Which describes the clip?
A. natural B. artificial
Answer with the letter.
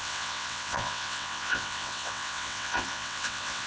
B